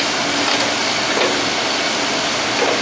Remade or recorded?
recorded